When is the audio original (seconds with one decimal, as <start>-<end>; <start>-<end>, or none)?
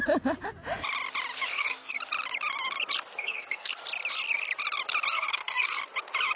0.0-1.5; 2.0-3.2; 3.8-5.1; 5.8-6.4